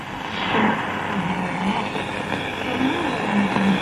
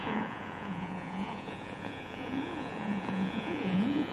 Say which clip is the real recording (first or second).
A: first